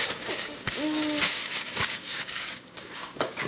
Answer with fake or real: fake